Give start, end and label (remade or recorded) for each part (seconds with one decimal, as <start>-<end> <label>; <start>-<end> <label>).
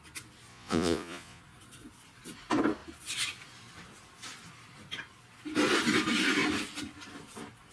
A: 0.0-0.5 recorded; 0.5-1.4 remade; 1.4-7.7 recorded